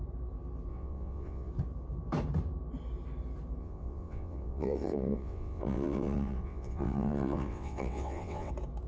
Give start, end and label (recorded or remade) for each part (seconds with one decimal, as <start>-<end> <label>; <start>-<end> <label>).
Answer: 0.0-0.7 recorded; 0.7-1.5 remade; 1.5-3.6 recorded; 3.6-8.5 remade; 8.5-8.9 recorded